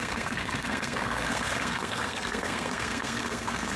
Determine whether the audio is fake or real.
fake